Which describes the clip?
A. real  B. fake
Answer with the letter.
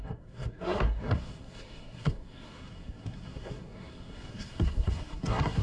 B